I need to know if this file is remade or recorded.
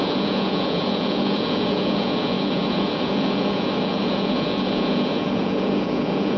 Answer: remade